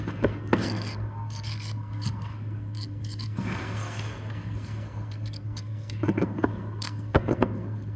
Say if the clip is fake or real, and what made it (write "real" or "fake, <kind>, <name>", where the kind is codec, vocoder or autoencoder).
fake, codec, SNAC